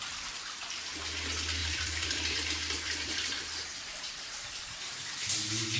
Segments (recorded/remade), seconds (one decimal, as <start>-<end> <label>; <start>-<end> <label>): 0.0-1.6 recorded; 1.6-5.1 remade; 5.1-5.8 recorded